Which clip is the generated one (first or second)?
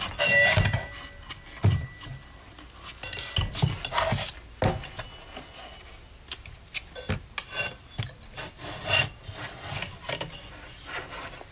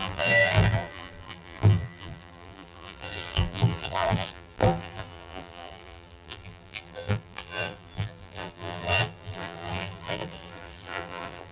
second